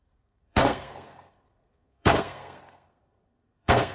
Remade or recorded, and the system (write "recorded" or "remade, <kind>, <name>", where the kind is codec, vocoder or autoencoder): remade, codec, SNAC